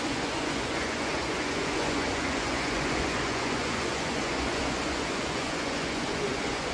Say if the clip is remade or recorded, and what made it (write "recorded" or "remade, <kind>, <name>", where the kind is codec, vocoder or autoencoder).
remade, vocoder, Vocos